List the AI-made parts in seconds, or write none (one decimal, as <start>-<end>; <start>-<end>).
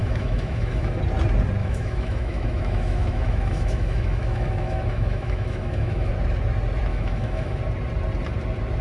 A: 0.0-1.0; 1.6-6.1; 6.9-7.6